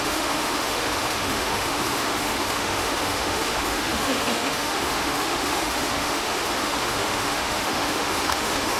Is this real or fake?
fake